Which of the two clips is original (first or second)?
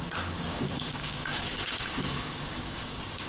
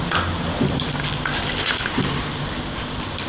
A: second